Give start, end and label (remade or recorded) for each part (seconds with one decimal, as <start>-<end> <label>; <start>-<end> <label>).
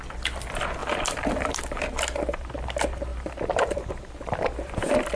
0.0-0.8 recorded; 0.8-1.9 remade; 1.9-3.1 recorded; 3.1-3.9 remade; 3.9-5.2 recorded